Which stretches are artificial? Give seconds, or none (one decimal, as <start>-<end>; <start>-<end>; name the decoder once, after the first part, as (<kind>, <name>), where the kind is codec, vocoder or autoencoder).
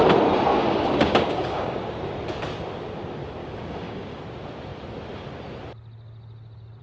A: 0.5-2.0 (codec, DAC); 3.4-4.2